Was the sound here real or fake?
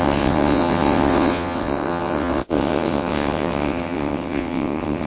fake